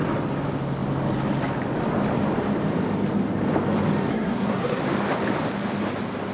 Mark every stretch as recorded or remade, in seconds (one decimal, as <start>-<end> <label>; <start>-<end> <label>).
0.0-4.1 recorded; 4.1-4.8 remade; 4.8-6.3 recorded